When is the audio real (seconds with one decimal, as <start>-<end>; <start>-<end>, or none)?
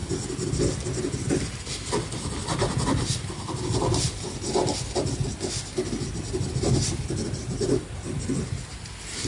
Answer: 0.0-9.3